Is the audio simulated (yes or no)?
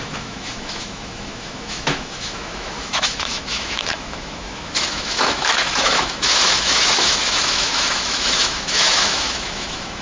yes